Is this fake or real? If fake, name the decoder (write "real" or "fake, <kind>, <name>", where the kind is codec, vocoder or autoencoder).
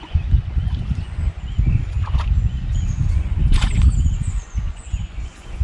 fake, vocoder, Vocos